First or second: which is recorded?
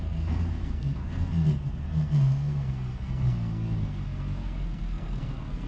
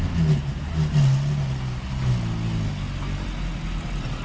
second